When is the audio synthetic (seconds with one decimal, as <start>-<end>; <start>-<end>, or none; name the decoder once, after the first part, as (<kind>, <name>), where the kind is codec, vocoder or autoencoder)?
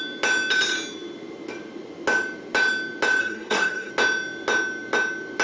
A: 3.2-3.9 (codec, SNAC)